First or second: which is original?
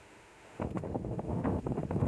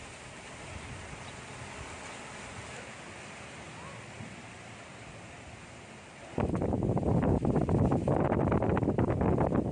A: second